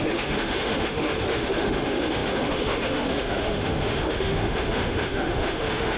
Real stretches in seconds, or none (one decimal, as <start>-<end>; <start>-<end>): none